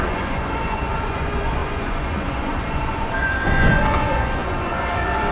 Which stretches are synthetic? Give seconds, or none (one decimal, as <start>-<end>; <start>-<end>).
0.0-5.3